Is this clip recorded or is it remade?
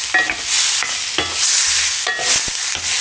recorded